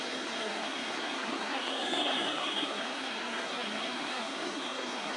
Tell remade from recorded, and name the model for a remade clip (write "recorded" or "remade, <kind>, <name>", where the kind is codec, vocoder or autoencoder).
remade, codec, SNAC